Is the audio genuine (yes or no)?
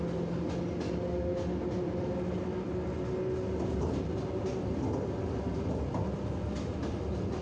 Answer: yes